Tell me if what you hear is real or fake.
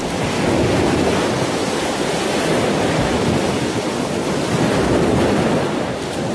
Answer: real